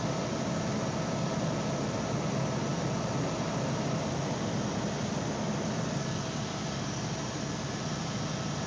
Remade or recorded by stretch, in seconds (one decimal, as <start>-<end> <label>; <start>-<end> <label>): 0.0-8.7 recorded